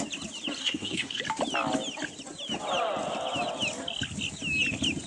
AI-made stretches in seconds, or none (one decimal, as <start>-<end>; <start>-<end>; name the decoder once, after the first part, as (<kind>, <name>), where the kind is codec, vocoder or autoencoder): 0.6-1.2 (codec, SNAC)